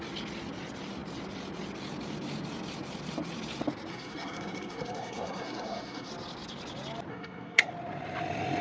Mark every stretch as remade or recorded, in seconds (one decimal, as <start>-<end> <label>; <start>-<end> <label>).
0.0-3.9 recorded; 3.9-6.1 remade; 6.1-7.1 recorded; 7.1-7.7 remade; 7.7-8.6 recorded